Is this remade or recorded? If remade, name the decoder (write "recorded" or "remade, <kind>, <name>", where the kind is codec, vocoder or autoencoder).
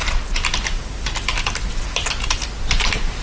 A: recorded